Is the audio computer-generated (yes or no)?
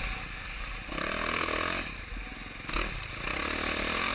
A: no